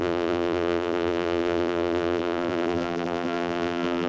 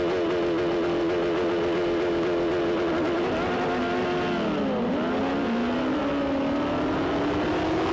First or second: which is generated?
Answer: first